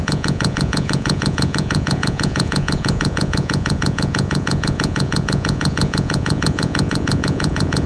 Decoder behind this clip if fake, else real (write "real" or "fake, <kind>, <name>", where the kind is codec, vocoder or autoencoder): fake, vocoder, Vocos